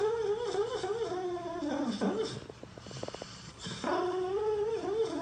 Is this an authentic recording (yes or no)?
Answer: no